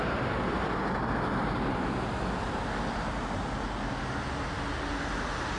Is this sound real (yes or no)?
yes